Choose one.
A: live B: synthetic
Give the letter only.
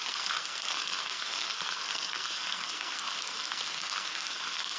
B